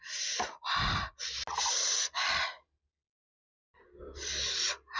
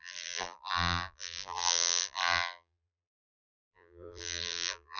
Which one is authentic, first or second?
first